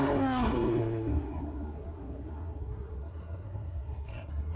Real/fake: fake